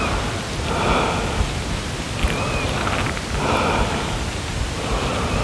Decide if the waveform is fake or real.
real